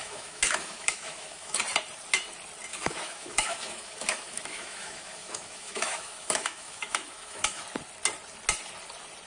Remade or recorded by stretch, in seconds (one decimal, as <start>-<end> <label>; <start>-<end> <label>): 0.0-1.6 remade; 1.6-2.7 recorded; 2.7-7.6 remade; 7.6-9.3 recorded